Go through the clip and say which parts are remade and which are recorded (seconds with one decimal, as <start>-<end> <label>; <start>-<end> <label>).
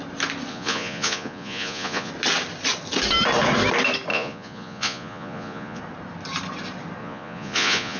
0.0-0.5 recorded; 0.5-2.1 remade; 2.1-4.1 recorded; 4.1-5.8 remade; 5.8-7.0 recorded; 7.0-8.0 remade